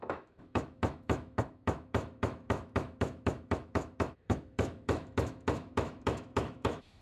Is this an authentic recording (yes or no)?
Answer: no